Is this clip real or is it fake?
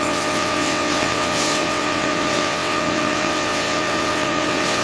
fake